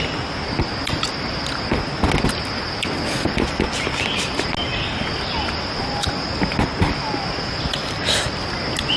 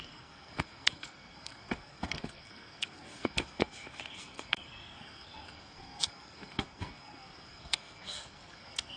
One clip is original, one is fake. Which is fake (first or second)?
second